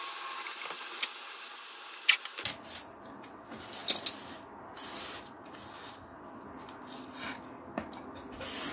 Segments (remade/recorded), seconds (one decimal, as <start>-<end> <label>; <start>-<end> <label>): 0.0-8.7 recorded